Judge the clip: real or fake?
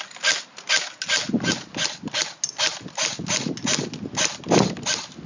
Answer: real